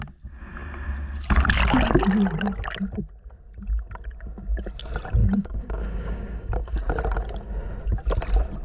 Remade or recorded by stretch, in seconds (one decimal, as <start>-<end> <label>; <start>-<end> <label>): 0.0-5.2 recorded; 5.2-6.5 remade; 6.5-8.6 recorded